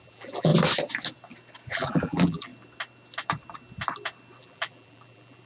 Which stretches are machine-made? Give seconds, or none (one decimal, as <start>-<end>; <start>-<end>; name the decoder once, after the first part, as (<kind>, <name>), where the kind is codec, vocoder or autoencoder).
0.0-0.5 (vocoder, BigVGAN v2); 1.7-2.5; 4.4-5.5